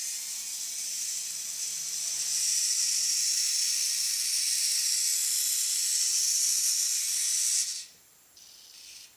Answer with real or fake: real